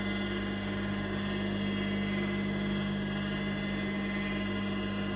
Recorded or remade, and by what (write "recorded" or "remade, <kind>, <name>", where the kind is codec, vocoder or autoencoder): recorded